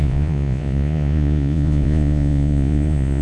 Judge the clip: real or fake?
fake